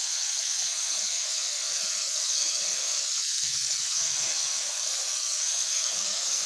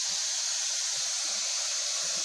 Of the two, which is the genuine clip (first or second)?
second